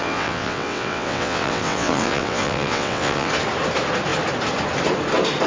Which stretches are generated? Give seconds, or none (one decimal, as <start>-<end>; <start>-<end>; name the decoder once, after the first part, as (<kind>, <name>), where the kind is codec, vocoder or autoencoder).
0.0-3.3 (vocoder, WaveNeXt)